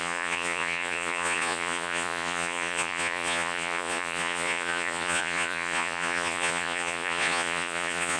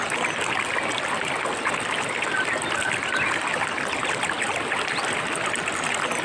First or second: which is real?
second